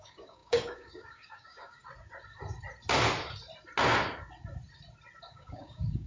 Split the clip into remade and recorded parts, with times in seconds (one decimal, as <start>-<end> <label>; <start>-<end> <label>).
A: 0.0-1.8 remade; 1.8-5.3 recorded; 5.3-6.1 remade